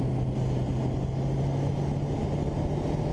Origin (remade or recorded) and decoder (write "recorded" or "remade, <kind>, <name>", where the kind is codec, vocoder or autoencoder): recorded